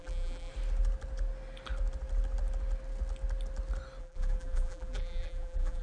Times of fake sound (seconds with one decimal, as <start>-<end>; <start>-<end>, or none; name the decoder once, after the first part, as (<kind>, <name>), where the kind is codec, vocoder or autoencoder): 0.0-0.5 (vocoder, BigVGAN v2); 4.0-5.8